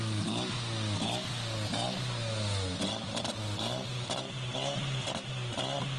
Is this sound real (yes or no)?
yes